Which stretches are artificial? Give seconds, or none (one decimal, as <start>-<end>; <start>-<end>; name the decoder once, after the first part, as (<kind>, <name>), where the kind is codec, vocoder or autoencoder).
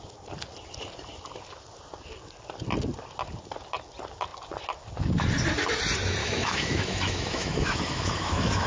6.2-8.7 (autoencoder, DAC-VAE)